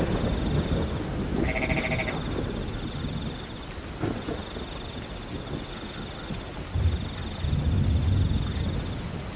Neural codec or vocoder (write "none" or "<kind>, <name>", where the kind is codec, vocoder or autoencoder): none